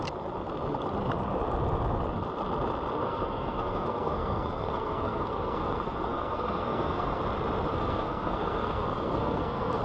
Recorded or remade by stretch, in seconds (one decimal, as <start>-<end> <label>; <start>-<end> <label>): 0.0-3.0 recorded; 3.0-7.2 remade; 7.2-7.7 recorded; 7.7-9.8 remade